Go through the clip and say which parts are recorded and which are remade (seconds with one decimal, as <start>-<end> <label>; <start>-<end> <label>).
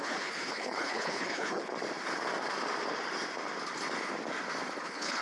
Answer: 0.0-1.7 remade; 1.7-4.8 recorded; 4.8-5.2 remade